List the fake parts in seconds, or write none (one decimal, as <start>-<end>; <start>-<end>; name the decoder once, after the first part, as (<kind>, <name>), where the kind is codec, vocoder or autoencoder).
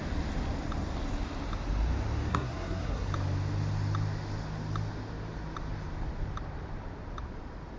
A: 2.3-3.1 (codec, SNAC)